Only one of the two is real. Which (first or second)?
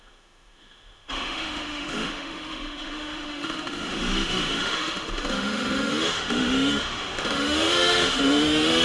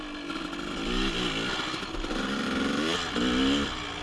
second